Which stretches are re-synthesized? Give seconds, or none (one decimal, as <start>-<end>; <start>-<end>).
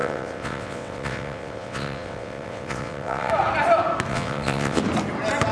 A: 0.0-3.3; 4.1-4.8